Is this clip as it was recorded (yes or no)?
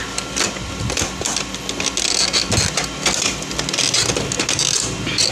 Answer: yes